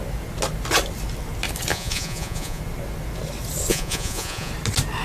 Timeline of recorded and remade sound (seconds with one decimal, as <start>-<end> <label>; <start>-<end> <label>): 0.0-1.7 recorded; 1.7-2.6 remade; 2.6-3.7 recorded; 3.7-4.5 remade; 4.5-5.0 recorded